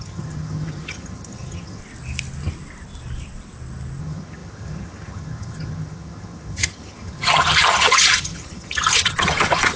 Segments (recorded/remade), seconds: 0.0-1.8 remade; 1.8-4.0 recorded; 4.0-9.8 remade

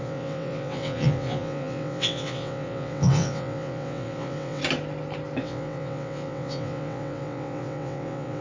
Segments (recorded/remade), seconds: 0.0-4.6 remade; 4.6-5.4 recorded; 5.4-8.4 remade

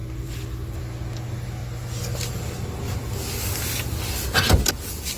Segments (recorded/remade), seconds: 0.0-0.8 remade; 0.8-5.2 recorded

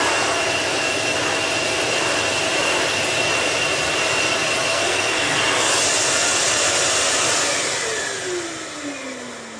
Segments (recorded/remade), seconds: 0.0-4.7 recorded; 4.7-5.4 remade; 5.4-9.6 recorded

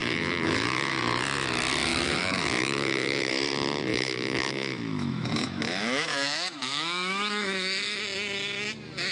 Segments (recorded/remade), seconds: 0.0-0.9 remade; 0.9-1.9 recorded; 1.9-3.3 remade; 3.3-3.9 recorded; 3.9-8.0 remade; 8.0-9.1 recorded

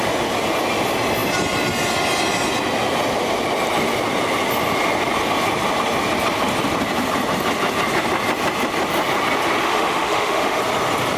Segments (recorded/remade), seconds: 0.0-9.6 recorded; 9.6-10.6 remade; 10.6-11.2 recorded